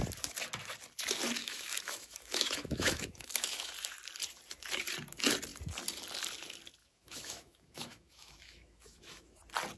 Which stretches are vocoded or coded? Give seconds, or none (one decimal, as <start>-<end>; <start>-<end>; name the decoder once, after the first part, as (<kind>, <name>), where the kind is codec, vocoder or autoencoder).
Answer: 1.4-3.7 (autoencoder, DAC-VAE); 6.8-9.4